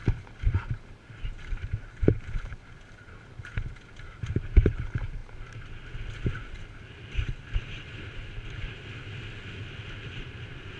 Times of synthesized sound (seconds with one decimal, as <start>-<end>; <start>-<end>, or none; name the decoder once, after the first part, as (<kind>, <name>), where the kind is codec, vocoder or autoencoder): 0.0-2.6 (vocoder, BigVGAN v2)